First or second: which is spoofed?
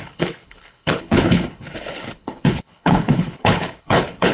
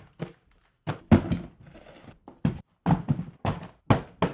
first